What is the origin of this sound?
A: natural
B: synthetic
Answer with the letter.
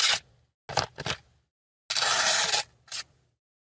A